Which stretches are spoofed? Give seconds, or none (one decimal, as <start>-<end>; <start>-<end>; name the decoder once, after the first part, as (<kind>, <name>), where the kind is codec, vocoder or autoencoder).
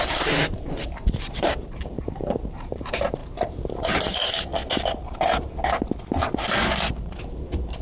0.0-4.5 (vocoder, BigVGAN v2); 6.9-7.8